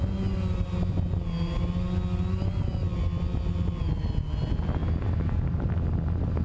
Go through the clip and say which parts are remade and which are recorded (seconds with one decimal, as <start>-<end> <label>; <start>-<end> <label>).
0.0-6.4 recorded